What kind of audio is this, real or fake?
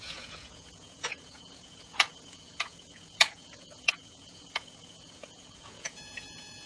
fake